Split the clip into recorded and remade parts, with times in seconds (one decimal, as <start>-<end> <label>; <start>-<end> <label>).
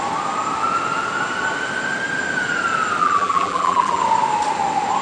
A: 0.0-3.0 recorded; 3.0-4.0 remade; 4.0-5.0 recorded